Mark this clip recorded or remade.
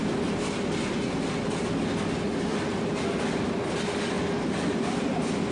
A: recorded